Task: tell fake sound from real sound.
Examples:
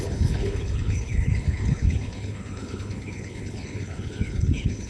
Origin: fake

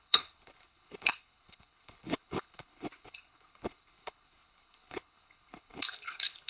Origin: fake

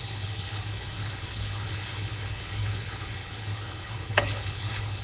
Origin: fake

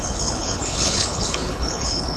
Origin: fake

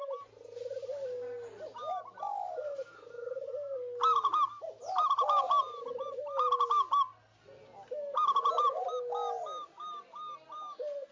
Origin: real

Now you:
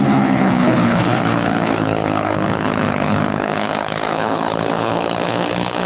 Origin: fake